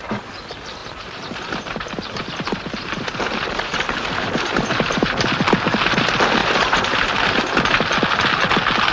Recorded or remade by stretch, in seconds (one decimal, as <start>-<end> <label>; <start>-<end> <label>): 0.0-0.8 recorded; 0.8-5.4 remade; 5.4-6.4 recorded; 6.4-7.4 remade; 7.4-8.9 recorded